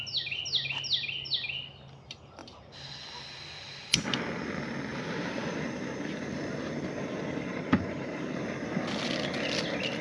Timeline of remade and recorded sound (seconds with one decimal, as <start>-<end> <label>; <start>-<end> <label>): 0.0-4.9 recorded; 4.9-8.8 remade; 8.8-10.0 recorded